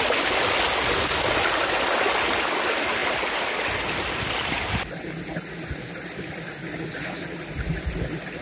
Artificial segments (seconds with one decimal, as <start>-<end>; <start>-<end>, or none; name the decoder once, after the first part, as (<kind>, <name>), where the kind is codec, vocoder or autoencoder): 3.0-3.6 (vocoder, BigVGAN v2)